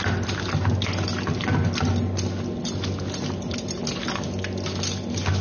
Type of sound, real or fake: real